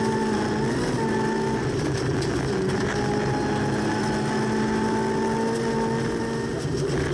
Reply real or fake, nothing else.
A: real